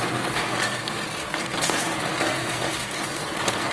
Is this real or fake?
fake